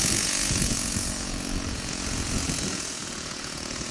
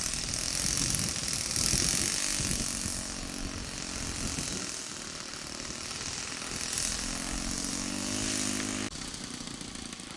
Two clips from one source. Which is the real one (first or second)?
second